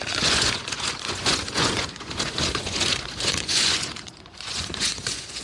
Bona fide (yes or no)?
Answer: no